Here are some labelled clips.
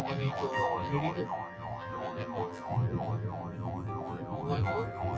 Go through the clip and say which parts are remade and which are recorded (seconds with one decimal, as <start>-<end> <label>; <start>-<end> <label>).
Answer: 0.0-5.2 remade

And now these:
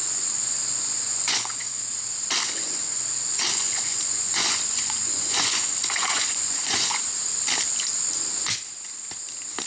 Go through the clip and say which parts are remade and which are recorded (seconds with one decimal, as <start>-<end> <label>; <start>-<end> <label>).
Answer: 0.0-1.8 remade; 1.8-2.4 recorded; 2.4-7.0 remade; 7.0-9.7 recorded

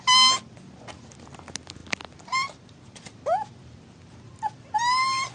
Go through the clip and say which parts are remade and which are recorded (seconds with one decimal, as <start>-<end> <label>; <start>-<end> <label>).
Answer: 0.0-5.3 recorded

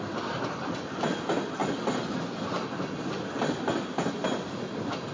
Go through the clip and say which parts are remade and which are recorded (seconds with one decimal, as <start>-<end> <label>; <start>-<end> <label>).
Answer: 0.0-5.1 recorded